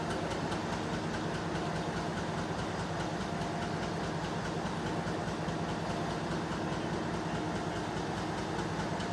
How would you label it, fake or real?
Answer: real